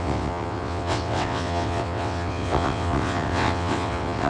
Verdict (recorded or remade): remade